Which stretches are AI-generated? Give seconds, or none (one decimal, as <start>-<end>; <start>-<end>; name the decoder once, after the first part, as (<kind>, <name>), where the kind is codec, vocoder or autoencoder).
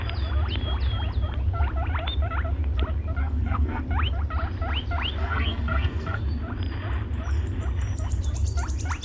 3.2-3.8 (codec, SNAC); 5.2-6.2